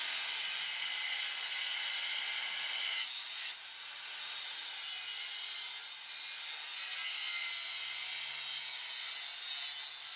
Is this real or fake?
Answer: real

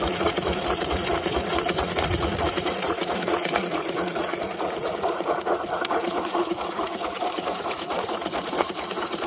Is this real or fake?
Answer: fake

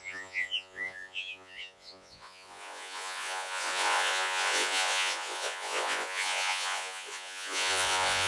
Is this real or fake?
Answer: fake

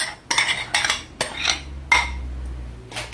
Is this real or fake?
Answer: real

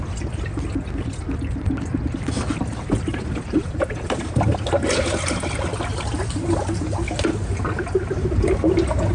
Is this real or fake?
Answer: real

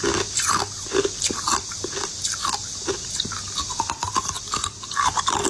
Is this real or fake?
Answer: real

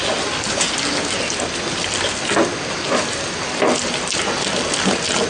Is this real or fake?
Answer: real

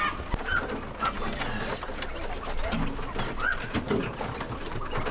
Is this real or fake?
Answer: real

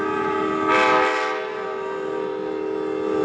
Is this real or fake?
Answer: real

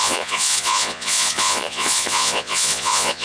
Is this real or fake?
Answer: fake